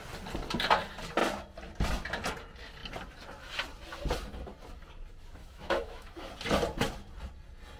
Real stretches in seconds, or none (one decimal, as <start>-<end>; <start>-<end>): 0.0-5.4; 6.3-7.8